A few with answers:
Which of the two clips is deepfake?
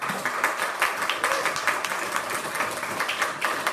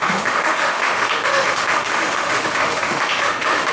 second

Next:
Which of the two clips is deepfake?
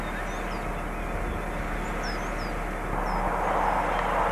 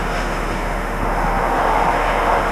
second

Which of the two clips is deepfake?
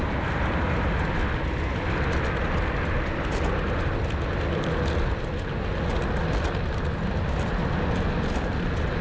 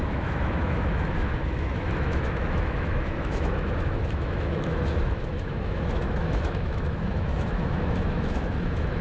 second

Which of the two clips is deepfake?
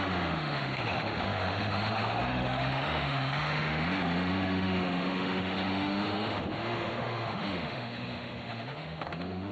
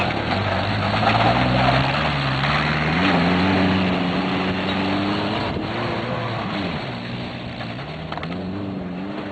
first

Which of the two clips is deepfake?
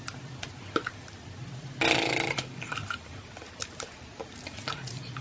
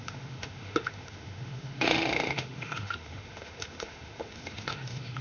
second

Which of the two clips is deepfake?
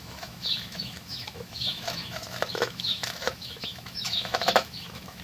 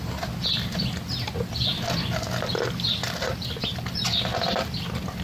first